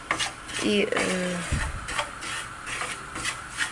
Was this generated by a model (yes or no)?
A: no